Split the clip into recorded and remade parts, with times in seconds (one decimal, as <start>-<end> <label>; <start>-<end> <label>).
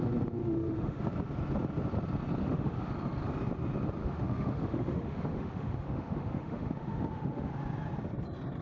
0.0-0.4 recorded; 0.4-1.0 remade; 1.0-2.4 recorded; 2.4-2.9 remade; 2.9-4.0 recorded; 4.0-7.5 remade; 7.5-8.6 recorded